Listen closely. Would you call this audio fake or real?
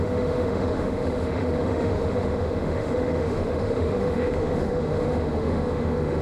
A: fake